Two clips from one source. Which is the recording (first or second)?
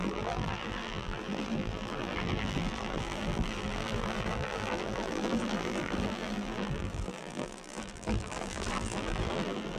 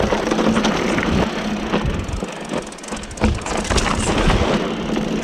second